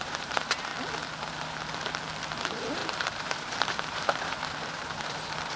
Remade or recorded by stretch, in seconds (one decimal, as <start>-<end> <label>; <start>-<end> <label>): 0.0-0.7 remade; 0.7-2.2 recorded; 2.2-5.6 remade